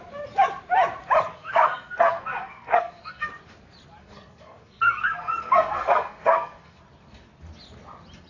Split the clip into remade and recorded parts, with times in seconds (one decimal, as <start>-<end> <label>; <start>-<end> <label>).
0.0-1.3 recorded; 1.3-3.3 remade; 3.3-4.0 recorded; 4.0-6.8 remade; 6.8-8.3 recorded